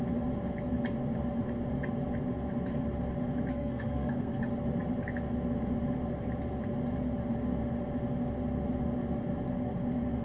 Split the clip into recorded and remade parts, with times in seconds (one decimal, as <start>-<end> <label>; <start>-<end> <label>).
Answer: 0.0-3.5 recorded; 3.5-4.4 remade; 4.4-10.2 recorded